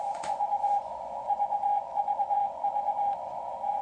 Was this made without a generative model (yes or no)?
no